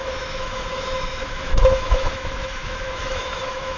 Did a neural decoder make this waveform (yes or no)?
yes